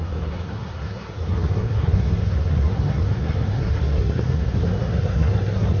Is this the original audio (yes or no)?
no